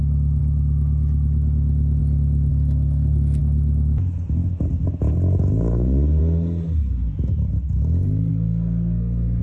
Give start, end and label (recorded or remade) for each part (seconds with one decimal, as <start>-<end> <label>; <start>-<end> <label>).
0.0-2.5 recorded; 2.5-3.4 remade; 3.4-8.3 recorded; 8.3-9.4 remade